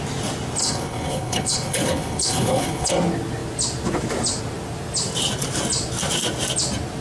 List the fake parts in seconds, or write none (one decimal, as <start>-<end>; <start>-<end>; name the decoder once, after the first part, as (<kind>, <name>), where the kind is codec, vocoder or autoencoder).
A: 0.6-2.9 (codec, HILCodec)